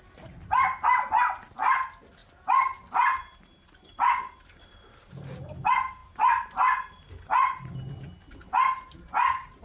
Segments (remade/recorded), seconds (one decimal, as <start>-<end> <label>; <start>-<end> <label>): 0.0-9.6 recorded